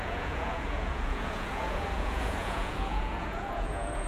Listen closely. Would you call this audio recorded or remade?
remade